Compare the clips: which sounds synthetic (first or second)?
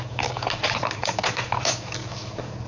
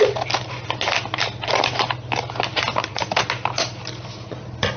first